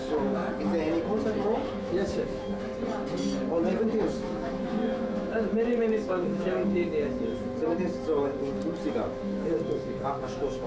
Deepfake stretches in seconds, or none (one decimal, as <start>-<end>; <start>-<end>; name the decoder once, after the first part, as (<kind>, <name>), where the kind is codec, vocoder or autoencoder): 0.0-0.4 (autoencoder, DAC-VAE); 1.8-2.7; 4.1-6.8; 8.9-10.7